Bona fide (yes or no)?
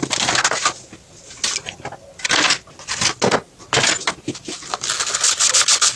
yes